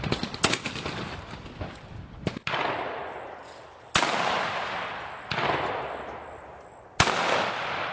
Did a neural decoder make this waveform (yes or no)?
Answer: no